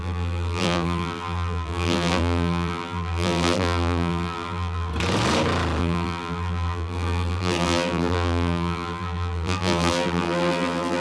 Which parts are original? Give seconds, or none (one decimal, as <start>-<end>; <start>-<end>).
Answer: 4.9-5.8